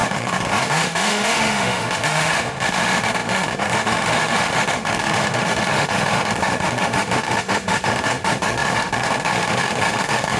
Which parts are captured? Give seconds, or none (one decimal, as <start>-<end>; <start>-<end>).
none